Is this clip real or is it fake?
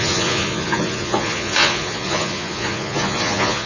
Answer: fake